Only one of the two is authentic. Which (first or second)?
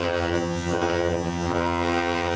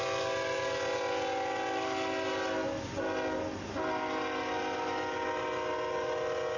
second